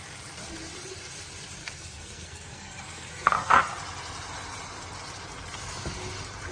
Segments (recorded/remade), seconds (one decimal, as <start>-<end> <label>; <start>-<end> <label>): 0.0-1.6 recorded; 1.6-3.6 remade; 3.6-6.5 recorded